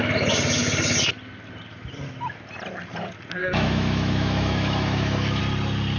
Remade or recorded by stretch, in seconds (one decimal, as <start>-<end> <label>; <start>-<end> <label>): 0.0-3.4 recorded; 3.4-5.4 remade; 5.4-6.0 recorded